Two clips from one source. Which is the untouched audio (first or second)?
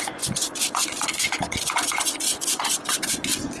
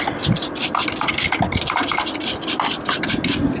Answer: second